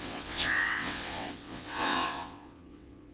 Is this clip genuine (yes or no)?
no